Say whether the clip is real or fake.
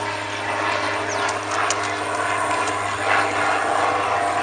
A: real